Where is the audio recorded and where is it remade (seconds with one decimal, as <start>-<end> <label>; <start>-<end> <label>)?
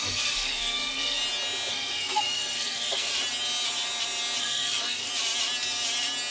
0.0-1.2 remade; 1.2-1.7 recorded; 1.7-3.1 remade; 3.1-4.4 recorded; 4.4-5.1 remade; 5.1-6.3 recorded